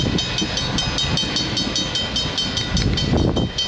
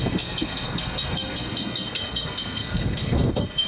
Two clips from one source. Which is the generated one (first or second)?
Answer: second